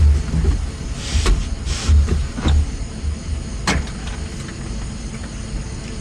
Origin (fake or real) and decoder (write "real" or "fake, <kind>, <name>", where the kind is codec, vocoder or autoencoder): real